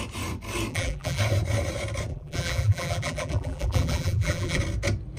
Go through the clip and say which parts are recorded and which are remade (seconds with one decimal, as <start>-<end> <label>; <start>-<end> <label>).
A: 0.0-0.7 recorded; 0.7-1.2 remade; 1.2-2.1 recorded; 2.1-4.6 remade; 4.6-5.2 recorded